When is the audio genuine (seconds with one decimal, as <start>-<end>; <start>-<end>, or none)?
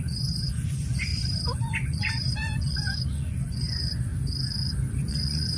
4.1-5.1